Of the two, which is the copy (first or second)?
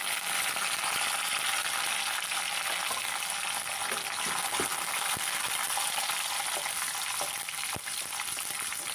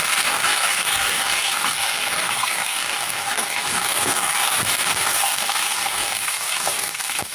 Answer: second